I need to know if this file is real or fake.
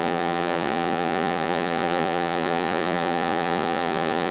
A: fake